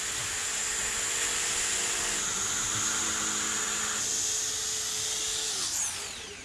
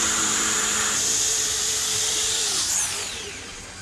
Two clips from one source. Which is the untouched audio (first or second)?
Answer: first